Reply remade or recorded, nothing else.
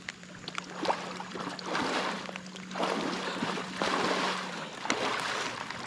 recorded